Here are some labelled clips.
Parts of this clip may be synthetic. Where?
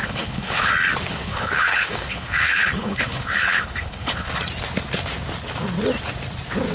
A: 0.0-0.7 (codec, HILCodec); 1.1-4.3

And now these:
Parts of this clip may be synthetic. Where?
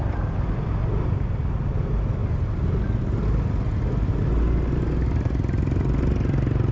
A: none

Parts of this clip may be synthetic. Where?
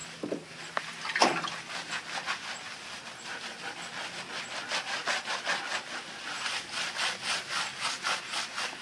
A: none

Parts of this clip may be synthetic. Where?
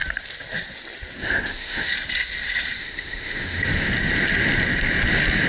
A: 1.2-1.9 (autoencoder, DAC-VAE); 2.8-3.9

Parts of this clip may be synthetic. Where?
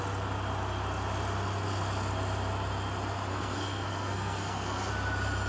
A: 3.3-4.9 (codec, SNAC)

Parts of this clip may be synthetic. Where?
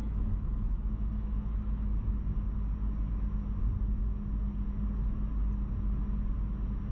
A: 0.0-2.2 (autoencoder, DAC-VAE)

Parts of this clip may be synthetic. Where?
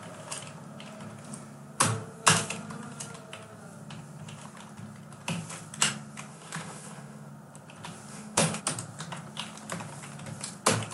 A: 6.3-7.3 (autoencoder, DAC-VAE); 8.1-8.6